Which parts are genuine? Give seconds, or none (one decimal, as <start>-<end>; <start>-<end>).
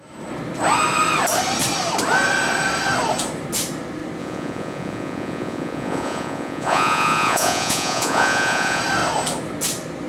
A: 0.0-4.2; 8.8-10.1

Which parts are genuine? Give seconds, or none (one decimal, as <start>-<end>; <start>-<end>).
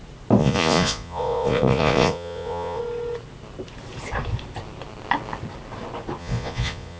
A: 0.0-0.4; 2.8-6.2